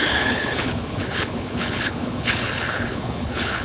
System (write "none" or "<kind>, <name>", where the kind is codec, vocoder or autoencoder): codec, HILCodec